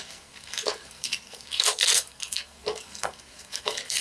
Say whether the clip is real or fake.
fake